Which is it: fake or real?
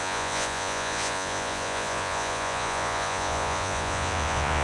fake